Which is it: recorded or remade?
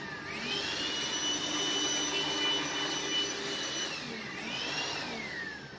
recorded